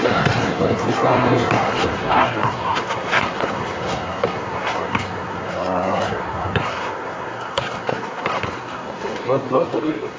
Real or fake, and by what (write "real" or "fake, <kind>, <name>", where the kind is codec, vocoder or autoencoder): fake, codec, SNAC